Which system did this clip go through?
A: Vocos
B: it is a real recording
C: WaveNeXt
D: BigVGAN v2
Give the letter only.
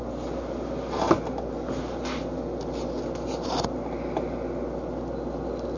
B